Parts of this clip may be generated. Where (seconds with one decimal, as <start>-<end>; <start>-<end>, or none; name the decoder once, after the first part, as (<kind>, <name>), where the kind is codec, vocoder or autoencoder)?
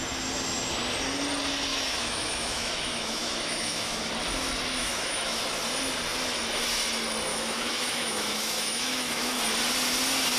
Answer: 1.7-4.1 (autoencoder, DAC-VAE); 4.8-5.4; 7.3-9.4